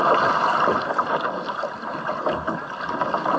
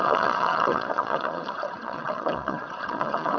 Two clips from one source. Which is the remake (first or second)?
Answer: second